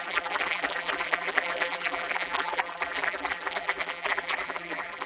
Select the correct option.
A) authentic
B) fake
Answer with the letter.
B